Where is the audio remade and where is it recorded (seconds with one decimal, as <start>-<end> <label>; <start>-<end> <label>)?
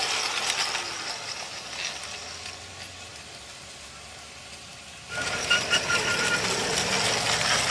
0.0-7.7 recorded